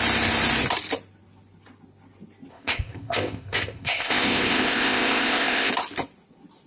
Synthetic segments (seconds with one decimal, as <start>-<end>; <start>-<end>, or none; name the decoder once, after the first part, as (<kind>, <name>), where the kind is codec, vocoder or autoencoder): 2.5-5.7 (codec, ZipCodec)